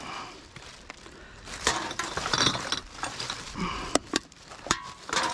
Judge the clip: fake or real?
fake